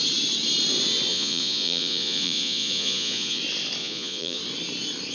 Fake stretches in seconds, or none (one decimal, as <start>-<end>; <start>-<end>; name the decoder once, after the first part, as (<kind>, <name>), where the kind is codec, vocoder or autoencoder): 1.1-3.4 (vocoder, Vocos); 3.8-4.4